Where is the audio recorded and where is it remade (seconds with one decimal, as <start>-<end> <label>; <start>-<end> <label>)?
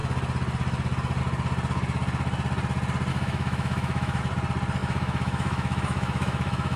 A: 0.0-3.1 recorded; 3.1-4.2 remade; 4.2-4.8 recorded; 4.8-6.8 remade